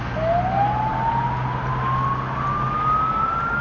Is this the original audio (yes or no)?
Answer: yes